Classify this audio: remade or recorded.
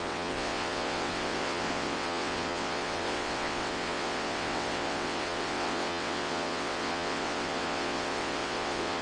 remade